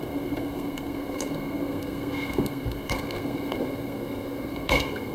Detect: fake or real fake